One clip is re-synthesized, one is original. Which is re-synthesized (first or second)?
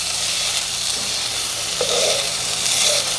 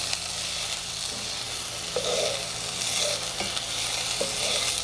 first